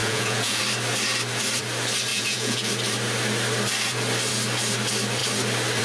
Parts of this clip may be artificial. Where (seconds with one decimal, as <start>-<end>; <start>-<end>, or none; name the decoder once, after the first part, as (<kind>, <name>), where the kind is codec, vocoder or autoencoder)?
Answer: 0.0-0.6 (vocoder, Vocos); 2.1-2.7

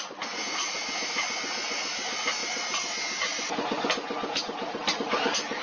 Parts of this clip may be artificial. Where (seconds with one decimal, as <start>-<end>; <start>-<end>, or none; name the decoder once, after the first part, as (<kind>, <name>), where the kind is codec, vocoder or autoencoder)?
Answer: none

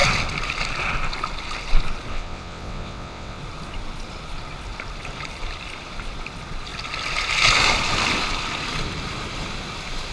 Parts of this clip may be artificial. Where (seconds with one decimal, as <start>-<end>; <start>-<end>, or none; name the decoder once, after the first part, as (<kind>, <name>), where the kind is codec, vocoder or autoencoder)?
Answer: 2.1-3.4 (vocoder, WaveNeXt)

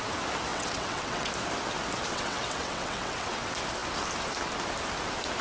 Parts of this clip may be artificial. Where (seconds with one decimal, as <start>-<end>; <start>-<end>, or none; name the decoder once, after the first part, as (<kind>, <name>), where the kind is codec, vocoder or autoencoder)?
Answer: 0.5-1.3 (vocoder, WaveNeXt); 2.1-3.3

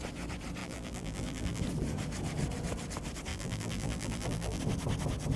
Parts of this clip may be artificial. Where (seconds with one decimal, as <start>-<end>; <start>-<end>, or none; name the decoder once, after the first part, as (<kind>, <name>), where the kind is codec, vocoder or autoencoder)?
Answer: 0.6-1.6 (vocoder, BigVGAN v2); 3.3-4.6

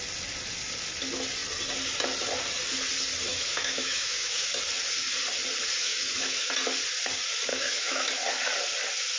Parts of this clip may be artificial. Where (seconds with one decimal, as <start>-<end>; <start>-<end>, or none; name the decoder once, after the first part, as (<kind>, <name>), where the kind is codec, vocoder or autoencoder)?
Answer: 3.3-4.5 (autoencoder, DAC-VAE); 5.8-6.5; 7.5-8.1

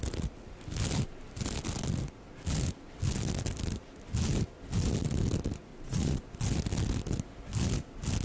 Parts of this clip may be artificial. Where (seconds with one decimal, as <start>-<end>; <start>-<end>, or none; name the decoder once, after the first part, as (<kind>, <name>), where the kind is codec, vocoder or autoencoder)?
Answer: 5.7-6.2 (vocoder, Vocos)

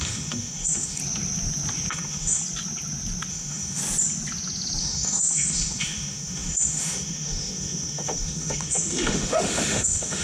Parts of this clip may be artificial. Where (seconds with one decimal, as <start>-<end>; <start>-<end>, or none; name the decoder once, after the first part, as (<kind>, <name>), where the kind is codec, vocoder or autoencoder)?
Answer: 0.0-1.0 (autoencoder, DAC-VAE); 1.9-2.4; 3.3-3.8; 4.8-10.2